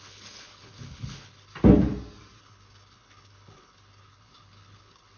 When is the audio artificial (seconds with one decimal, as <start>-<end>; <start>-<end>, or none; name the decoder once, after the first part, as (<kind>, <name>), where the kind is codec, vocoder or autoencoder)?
0.0-1.5 (codec, HILCodec); 2.4-5.2